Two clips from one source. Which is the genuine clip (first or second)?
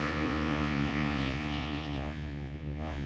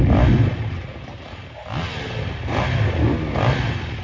second